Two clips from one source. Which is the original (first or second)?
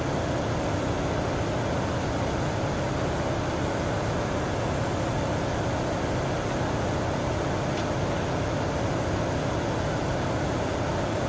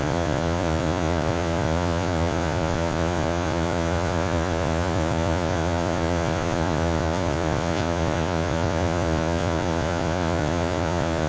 first